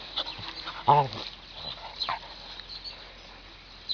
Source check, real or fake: real